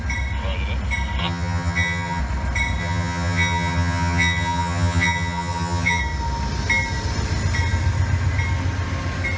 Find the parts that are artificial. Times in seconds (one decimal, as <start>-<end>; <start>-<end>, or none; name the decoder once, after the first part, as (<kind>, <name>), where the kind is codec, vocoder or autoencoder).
1.2-2.2 (vocoder, HiFi-GAN); 2.8-6.0